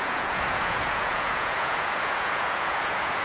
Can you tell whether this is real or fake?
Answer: fake